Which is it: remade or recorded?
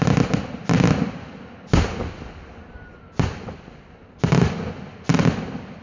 recorded